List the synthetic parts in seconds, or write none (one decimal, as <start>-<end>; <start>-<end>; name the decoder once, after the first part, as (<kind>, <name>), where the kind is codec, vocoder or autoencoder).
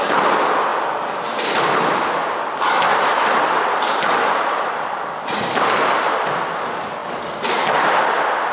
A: 0.7-4.8 (vocoder, BigVGAN v2); 7.0-7.9